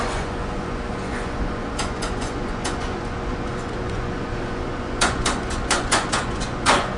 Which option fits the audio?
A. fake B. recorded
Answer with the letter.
A